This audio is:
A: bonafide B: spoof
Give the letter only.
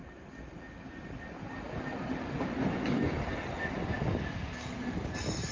A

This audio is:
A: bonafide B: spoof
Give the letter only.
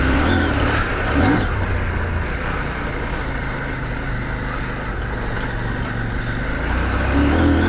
A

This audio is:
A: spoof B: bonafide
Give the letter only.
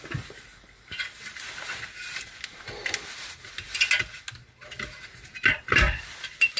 B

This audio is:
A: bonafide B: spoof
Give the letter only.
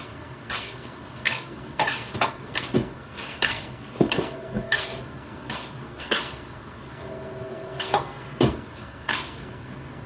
B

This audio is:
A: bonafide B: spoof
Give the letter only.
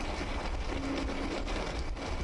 A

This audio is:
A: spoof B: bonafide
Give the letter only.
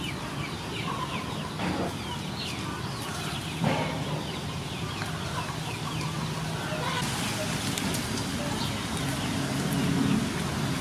B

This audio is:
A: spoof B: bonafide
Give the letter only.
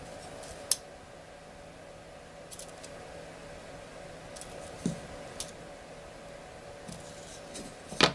B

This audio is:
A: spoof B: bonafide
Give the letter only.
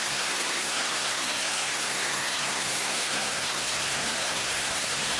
A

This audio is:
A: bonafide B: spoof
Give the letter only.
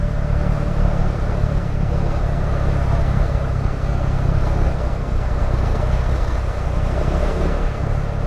B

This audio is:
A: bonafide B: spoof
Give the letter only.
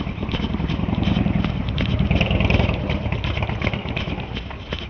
A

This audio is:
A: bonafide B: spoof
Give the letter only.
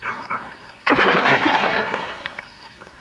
B